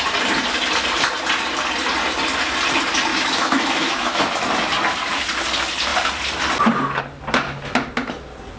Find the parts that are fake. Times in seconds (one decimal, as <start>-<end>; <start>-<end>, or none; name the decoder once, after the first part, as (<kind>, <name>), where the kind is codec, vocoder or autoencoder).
3.1-4.2 (autoencoder, DAC-VAE)